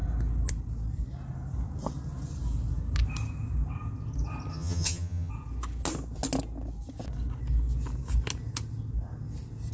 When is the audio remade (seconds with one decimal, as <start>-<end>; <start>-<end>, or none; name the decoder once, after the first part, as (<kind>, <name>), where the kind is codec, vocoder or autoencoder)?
4.5-5.3 (vocoder, HiFi-GAN)